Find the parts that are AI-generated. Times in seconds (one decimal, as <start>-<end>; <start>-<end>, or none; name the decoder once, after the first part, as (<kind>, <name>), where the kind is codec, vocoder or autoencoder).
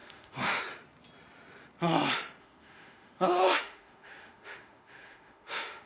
0.0-0.6 (autoencoder, DAC-VAE); 2.4-5.9